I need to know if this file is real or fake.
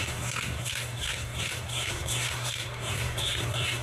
fake